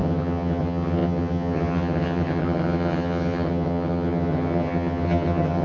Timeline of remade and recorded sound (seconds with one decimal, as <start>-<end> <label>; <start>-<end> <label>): 0.0-5.6 remade